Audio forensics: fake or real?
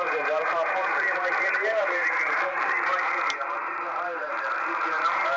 fake